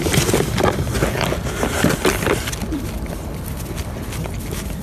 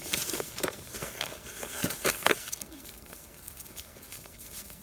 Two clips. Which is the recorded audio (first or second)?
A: first